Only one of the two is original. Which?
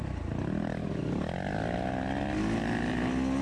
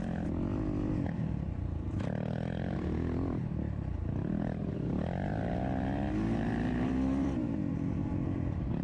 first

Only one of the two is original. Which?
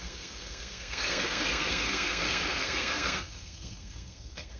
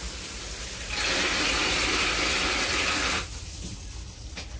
second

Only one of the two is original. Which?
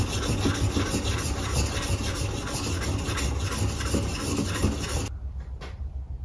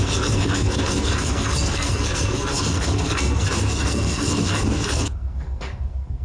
first